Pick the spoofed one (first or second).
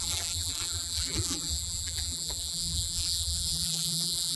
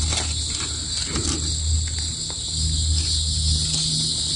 first